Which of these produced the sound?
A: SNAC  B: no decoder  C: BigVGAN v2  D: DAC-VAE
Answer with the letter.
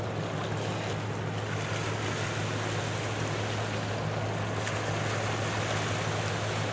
B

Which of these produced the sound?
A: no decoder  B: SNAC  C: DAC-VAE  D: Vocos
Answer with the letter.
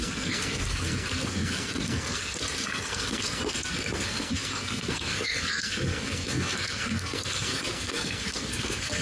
B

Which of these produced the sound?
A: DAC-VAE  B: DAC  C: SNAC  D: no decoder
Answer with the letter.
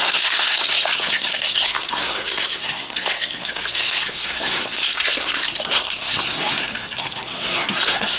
C